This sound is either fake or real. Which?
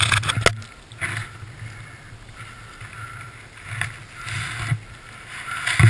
real